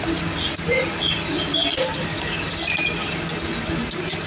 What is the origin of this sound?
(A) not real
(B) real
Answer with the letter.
B